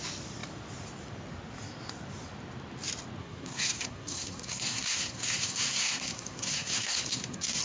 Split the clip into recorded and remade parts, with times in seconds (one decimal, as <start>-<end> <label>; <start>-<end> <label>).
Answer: 0.0-3.2 recorded; 3.2-7.6 remade